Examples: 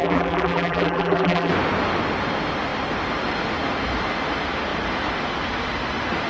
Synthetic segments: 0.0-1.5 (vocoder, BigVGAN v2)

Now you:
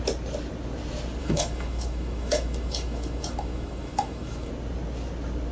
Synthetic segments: 1.2-4.5 (autoencoder, DAC-VAE)

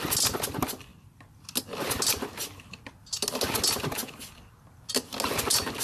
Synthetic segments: none

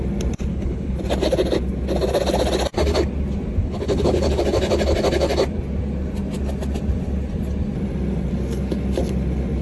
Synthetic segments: 0.5-1.0 (codec, HILCodec); 3.6-4.4

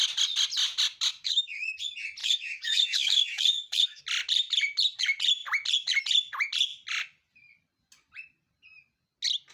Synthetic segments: 1.1-1.8 (codec, DAC); 2.2-4.0